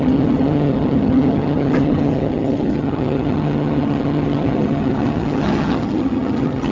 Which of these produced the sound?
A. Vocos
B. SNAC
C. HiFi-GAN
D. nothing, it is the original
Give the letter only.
C